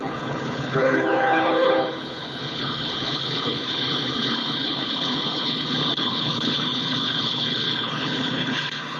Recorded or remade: remade